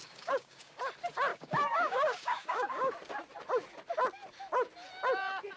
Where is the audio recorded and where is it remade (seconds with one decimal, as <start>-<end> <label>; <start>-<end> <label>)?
0.0-0.8 remade; 0.8-1.3 recorded; 1.3-2.9 remade; 2.9-5.6 recorded